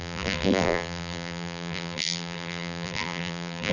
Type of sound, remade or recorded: remade